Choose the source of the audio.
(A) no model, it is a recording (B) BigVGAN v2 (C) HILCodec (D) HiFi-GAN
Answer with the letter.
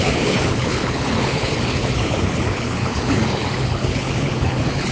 C